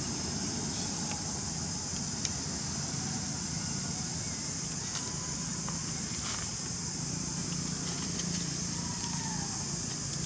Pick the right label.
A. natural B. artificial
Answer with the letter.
A